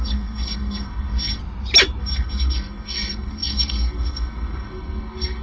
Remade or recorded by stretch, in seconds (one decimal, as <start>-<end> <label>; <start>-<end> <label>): 0.0-1.4 remade; 1.4-2.0 recorded; 2.0-5.4 remade

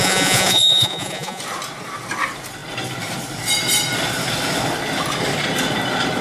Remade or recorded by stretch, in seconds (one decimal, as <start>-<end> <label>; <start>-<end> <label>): 0.0-1.4 remade; 1.4-6.2 recorded

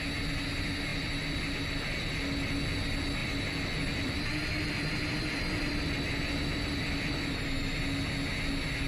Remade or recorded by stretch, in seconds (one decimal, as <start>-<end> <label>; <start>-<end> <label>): 0.0-0.9 recorded; 0.9-2.5 remade; 2.5-3.2 recorded; 3.2-7.8 remade; 7.8-8.9 recorded

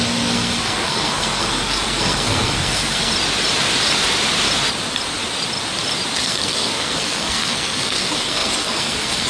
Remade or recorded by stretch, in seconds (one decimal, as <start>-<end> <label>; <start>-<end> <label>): 0.0-3.1 remade; 3.1-6.2 recorded; 6.2-9.3 remade

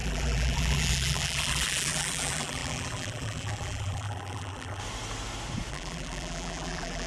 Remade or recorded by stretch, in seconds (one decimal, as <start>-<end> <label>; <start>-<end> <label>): 0.0-4.8 remade; 4.8-5.7 recorded; 5.7-7.1 remade

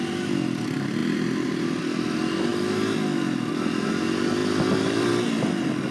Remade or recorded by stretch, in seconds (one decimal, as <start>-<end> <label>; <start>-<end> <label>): 0.0-4.4 recorded; 4.4-5.1 remade; 5.1-5.9 recorded

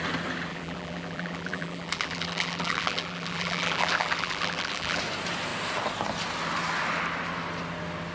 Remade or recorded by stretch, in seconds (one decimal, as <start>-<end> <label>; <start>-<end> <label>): 0.0-0.5 recorded; 0.5-5.0 remade; 5.0-8.1 recorded

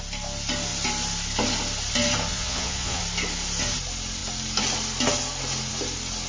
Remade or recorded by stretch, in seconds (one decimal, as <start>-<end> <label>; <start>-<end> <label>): 0.0-2.3 recorded; 2.3-3.0 remade; 3.0-6.3 recorded